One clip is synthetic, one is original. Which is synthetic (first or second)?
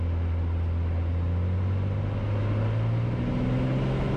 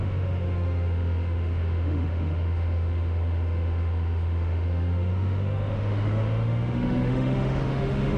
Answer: second